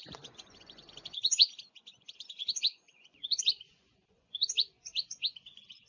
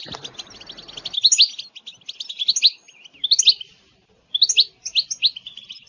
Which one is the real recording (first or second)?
second